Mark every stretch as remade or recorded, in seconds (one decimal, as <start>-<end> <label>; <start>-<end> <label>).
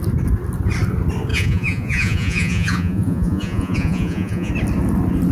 0.0-1.3 recorded; 1.3-4.5 remade; 4.5-5.3 recorded